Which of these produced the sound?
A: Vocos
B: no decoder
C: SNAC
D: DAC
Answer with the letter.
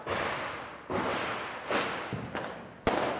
B